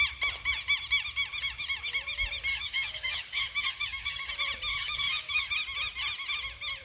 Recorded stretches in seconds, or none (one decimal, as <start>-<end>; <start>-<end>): 0.0-2.5; 4.3-4.7; 5.5-6.8